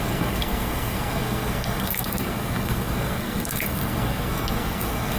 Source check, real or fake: fake